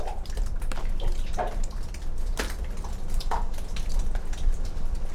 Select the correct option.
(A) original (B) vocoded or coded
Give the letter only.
B